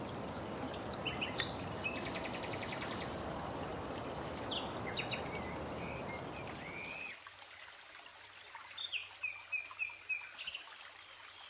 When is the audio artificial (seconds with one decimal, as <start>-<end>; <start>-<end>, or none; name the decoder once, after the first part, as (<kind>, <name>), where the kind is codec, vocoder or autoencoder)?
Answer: none